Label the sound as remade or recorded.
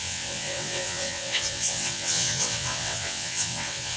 remade